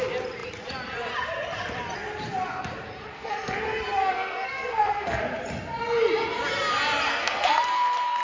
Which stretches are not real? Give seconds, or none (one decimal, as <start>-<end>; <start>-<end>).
3.1-3.6; 4.0-5.2; 7.1-8.2